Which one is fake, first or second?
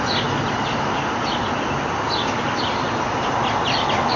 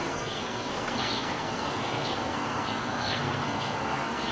second